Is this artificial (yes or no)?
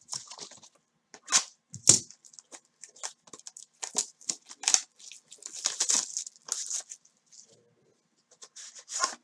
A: no